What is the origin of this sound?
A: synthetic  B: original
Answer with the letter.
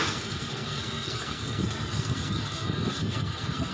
A